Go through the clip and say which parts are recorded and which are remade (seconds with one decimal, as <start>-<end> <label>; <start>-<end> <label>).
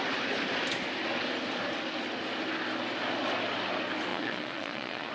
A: 0.0-4.1 recorded; 4.1-5.1 remade